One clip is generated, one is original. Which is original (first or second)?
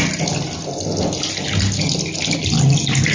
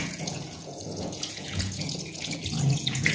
first